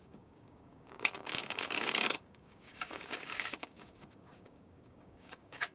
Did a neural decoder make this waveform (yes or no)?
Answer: yes